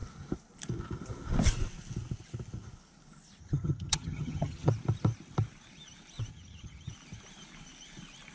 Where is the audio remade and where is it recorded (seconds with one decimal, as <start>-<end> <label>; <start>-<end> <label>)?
0.0-3.4 recorded; 3.4-4.7 remade; 4.7-6.3 recorded; 6.3-6.9 remade; 6.9-8.3 recorded

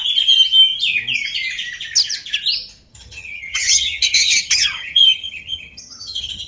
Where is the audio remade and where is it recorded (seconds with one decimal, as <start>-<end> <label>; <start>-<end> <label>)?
0.0-2.9 recorded; 2.9-6.5 remade

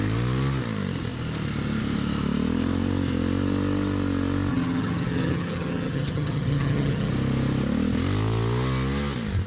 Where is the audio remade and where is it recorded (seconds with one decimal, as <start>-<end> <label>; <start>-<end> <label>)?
0.0-4.5 recorded; 4.5-7.1 remade; 7.1-9.5 recorded

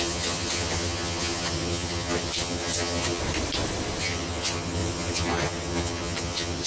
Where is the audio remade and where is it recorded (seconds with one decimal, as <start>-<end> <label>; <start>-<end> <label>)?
0.0-3.2 remade; 3.2-4.0 recorded; 4.0-6.7 remade